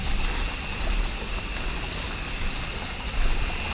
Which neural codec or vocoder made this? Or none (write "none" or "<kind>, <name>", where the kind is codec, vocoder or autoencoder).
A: none